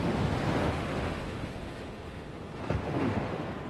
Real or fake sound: fake